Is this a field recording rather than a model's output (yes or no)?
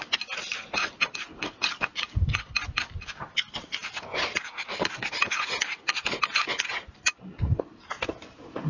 yes